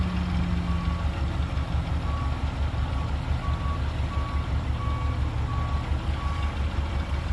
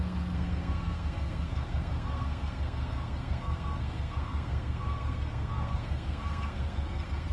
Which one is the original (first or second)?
first